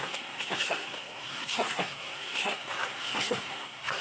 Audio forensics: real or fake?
fake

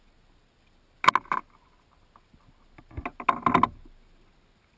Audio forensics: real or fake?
real